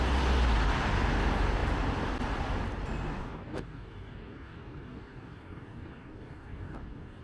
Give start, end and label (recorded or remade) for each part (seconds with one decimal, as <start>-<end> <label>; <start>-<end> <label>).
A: 0.0-3.2 recorded; 3.2-7.2 remade